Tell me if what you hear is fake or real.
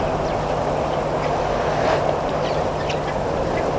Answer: real